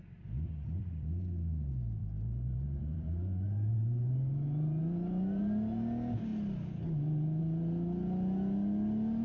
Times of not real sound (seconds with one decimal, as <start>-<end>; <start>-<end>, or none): 2.0-5.4